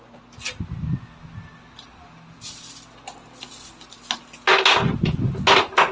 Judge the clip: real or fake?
real